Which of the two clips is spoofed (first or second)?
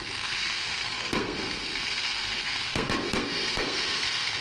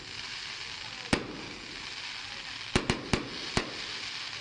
first